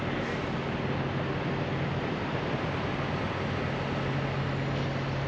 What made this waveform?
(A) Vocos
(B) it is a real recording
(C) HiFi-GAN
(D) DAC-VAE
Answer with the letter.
B